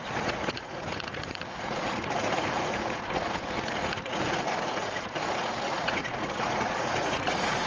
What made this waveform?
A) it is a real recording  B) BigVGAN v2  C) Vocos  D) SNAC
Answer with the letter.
C